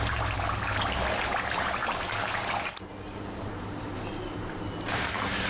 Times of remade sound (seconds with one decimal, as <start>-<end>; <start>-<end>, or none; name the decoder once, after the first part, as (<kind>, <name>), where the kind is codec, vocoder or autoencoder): 0.0-5.5 (vocoder, BigVGAN v2)